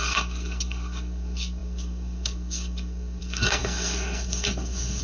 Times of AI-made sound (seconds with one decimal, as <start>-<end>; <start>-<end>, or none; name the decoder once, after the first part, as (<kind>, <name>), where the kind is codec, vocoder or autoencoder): 0.0-5.0 (codec, SNAC)